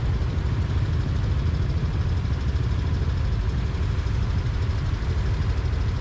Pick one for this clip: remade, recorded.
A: recorded